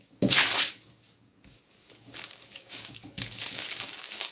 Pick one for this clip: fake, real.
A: fake